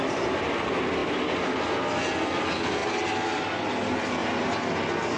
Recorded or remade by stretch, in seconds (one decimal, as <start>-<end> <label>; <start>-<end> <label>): 0.0-2.8 recorded; 2.8-3.5 remade; 3.5-4.2 recorded; 4.2-4.7 remade; 4.7-5.2 recorded